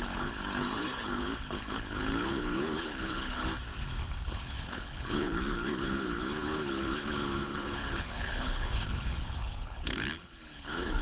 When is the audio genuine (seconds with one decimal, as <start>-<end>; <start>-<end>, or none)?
3.5-4.3